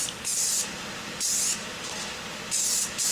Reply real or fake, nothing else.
real